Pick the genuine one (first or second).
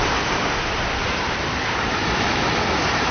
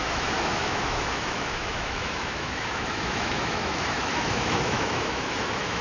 first